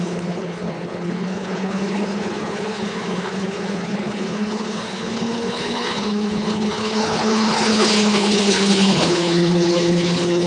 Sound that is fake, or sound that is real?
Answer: fake